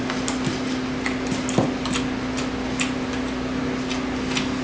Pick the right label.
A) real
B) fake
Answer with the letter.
A